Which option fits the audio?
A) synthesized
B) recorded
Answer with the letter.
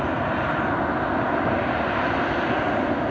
B